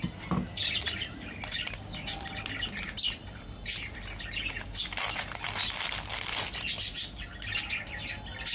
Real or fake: real